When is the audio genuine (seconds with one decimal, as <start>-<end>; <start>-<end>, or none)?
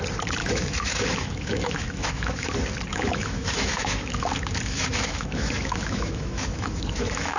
0.0-0.4; 2.5-2.9